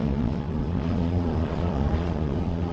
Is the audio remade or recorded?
remade